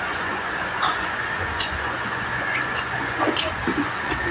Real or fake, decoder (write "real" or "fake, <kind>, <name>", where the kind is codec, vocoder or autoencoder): fake, vocoder, Vocos